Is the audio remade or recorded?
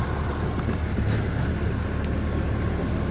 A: recorded